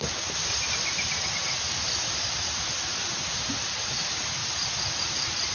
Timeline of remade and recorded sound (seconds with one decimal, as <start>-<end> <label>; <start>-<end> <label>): 0.0-5.5 recorded